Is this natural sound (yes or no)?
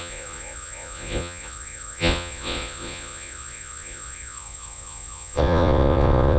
no